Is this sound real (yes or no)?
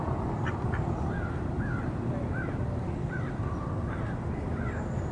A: no